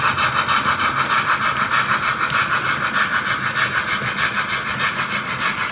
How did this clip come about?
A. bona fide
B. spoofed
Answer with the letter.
A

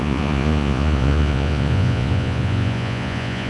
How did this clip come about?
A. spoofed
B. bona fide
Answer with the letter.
A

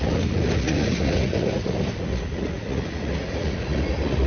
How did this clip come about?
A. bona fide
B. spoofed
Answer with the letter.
B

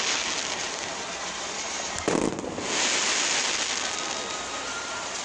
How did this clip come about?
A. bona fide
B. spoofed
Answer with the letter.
A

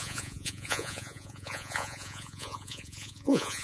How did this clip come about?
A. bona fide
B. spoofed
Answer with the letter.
B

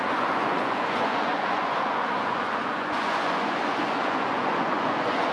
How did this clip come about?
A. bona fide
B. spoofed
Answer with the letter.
B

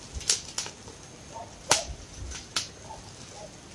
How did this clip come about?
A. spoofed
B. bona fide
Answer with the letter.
B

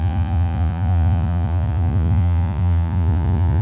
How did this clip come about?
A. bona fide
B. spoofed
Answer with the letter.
B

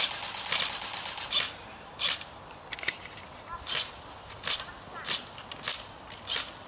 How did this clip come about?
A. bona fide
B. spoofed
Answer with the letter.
A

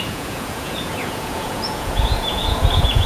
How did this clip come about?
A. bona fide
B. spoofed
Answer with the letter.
B